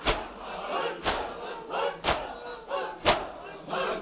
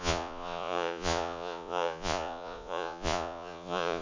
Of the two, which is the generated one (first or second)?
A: second